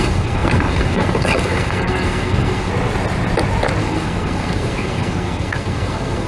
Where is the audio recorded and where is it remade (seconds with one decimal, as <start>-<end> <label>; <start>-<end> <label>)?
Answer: 0.0-2.7 remade; 2.7-3.8 recorded; 3.8-6.3 remade